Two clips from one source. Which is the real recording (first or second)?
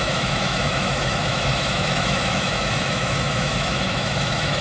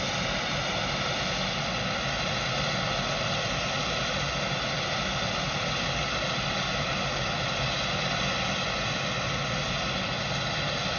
second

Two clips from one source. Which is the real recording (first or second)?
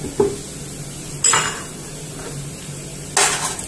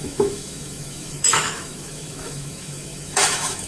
first